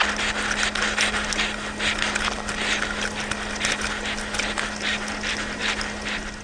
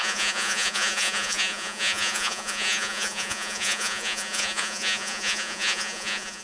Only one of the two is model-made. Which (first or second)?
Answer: second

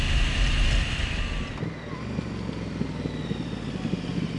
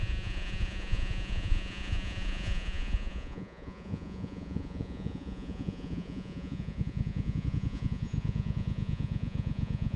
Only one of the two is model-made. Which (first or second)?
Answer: second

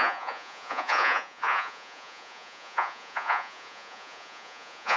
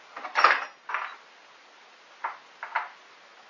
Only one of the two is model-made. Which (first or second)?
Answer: first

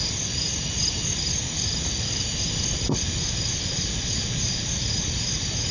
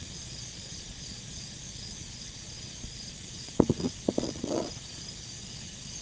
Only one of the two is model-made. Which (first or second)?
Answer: second